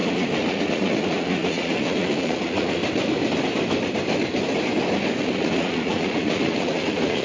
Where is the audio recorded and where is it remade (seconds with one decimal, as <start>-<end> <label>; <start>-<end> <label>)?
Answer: 0.0-2.8 remade; 2.8-5.2 recorded; 5.2-7.2 remade

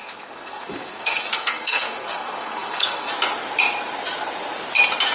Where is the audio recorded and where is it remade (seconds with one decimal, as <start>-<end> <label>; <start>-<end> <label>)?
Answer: 0.0-3.1 remade; 3.1-5.1 recorded

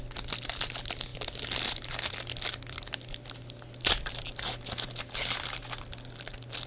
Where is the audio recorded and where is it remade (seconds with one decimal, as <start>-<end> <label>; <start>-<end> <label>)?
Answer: 0.0-6.7 remade

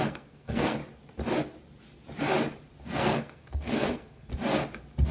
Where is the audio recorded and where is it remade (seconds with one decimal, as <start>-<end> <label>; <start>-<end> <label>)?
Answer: 0.0-0.8 remade; 0.8-2.8 recorded; 2.8-4.3 remade; 4.3-5.1 recorded